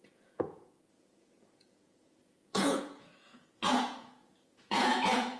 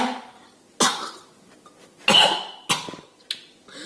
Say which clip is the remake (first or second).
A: first